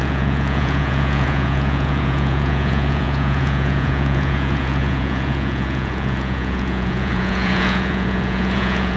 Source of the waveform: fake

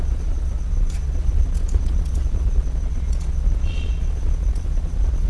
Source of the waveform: fake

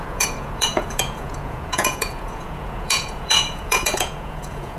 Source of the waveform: fake